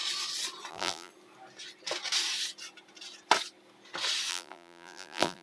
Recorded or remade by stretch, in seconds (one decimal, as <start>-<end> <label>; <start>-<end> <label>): 0.0-0.7 recorded; 0.7-1.1 remade; 1.1-4.3 recorded; 4.3-5.4 remade